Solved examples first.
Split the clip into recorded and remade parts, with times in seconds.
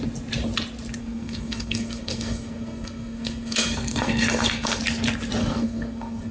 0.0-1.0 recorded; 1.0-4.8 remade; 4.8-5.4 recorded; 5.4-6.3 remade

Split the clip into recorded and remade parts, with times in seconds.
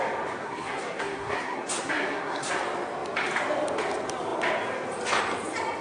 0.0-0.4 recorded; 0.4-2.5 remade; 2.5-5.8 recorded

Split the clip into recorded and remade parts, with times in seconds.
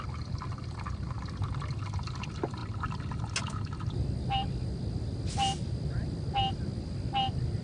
0.0-7.6 recorded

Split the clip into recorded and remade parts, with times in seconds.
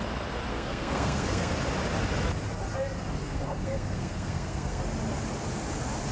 0.0-0.5 recorded; 0.5-1.5 remade; 1.5-3.2 recorded; 3.2-4.8 remade; 4.8-6.1 recorded